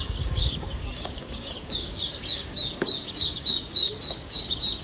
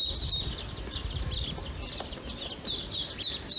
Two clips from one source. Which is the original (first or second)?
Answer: second